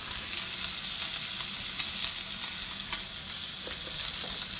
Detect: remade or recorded recorded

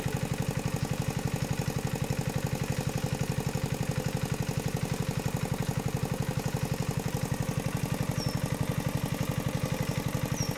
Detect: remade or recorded recorded